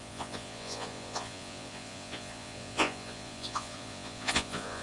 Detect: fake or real fake